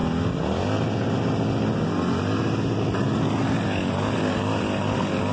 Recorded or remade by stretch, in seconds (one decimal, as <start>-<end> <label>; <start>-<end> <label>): 0.0-5.3 recorded